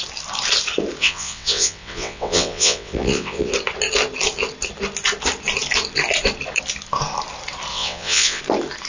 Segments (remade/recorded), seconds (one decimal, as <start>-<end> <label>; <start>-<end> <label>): 0.0-1.0 recorded; 1.0-3.5 remade; 3.5-7.7 recorded; 7.7-8.4 remade; 8.4-8.9 recorded